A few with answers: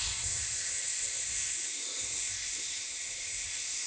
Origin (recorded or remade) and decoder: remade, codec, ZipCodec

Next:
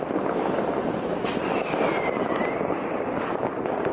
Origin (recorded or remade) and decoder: recorded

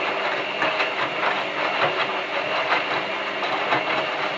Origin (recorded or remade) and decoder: recorded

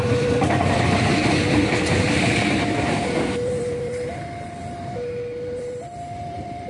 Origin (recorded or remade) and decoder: remade, vocoder, BigVGAN v2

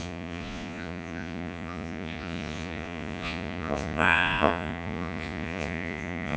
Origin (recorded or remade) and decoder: remade, vocoder, Vocos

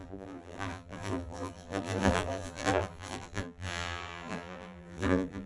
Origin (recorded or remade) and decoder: remade, vocoder, BigVGAN v2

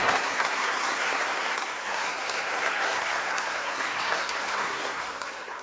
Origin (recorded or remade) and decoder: remade, codec, SNAC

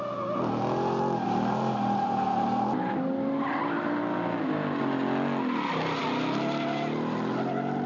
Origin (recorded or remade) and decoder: recorded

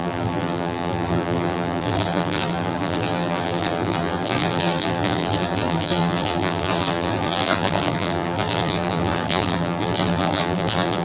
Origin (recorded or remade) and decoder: remade, vocoder, BigVGAN v2